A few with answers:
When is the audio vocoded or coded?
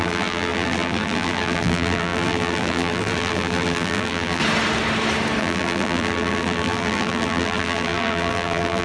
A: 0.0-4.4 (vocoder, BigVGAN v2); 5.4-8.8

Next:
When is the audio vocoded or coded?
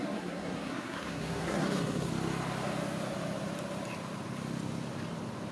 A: 0.0-2.1 (codec, SNAC)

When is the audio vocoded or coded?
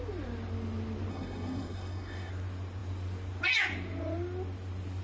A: 1.1-2.3 (codec, SNAC)